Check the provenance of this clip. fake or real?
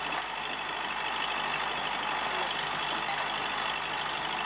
real